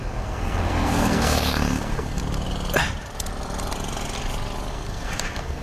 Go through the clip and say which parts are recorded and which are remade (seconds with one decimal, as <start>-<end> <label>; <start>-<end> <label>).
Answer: 0.0-2.2 remade; 2.2-4.7 recorded; 4.7-5.6 remade